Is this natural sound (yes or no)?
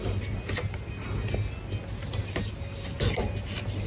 yes